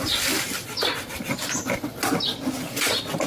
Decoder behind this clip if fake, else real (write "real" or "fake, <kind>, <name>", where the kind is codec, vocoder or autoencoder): real